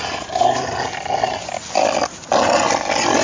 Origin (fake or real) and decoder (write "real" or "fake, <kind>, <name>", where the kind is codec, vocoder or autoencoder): real